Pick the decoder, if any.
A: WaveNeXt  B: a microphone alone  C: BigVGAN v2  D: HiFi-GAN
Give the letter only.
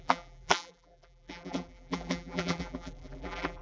C